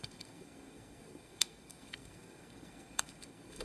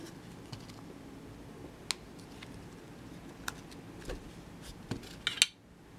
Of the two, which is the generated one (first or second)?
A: first